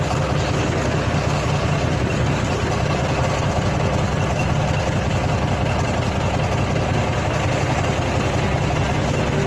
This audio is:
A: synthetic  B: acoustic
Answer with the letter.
B